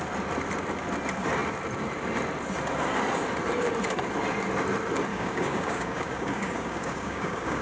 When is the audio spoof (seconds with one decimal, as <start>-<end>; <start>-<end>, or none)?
5.1-7.6